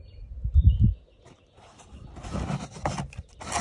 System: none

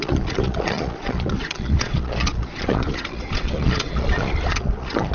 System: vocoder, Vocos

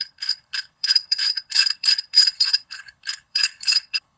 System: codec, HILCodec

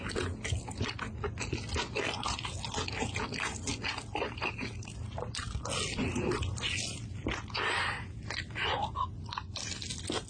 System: none